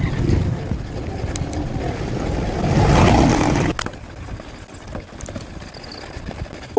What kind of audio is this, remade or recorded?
recorded